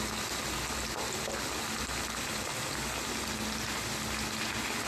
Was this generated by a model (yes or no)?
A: no